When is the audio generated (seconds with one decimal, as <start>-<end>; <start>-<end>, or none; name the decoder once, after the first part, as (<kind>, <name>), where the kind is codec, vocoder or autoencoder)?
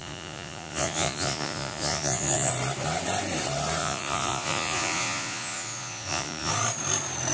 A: 0.0-2.5 (vocoder, Vocos); 3.8-6.5